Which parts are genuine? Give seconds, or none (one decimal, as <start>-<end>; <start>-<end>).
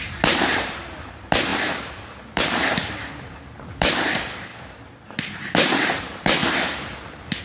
4.5-6.0; 6.4-7.4